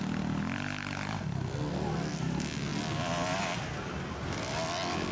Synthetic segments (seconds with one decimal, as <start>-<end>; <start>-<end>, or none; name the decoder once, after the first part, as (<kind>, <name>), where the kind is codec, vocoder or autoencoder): none